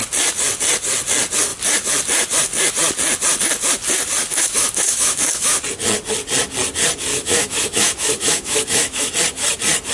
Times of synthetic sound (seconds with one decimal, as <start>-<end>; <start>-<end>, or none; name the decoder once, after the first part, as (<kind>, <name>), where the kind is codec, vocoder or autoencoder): 4.3-5.6 (autoencoder, DAC-VAE); 7.1-9.1